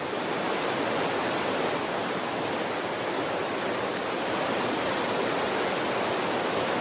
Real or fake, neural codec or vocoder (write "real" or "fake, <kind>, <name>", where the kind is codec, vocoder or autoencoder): real